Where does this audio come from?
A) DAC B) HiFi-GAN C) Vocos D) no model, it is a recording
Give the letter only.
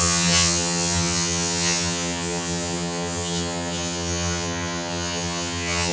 B